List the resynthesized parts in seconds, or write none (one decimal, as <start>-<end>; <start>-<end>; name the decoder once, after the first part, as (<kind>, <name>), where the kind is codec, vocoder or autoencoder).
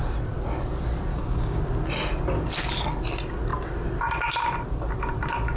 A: 1.1-1.6 (codec, DAC)